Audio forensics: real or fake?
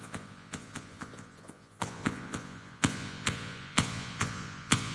fake